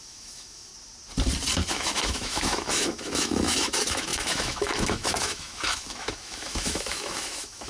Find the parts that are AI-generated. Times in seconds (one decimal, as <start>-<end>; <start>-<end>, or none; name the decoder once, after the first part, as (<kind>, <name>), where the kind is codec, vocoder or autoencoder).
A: 0.0-0.7 (autoencoder, DAC-VAE); 1.7-7.7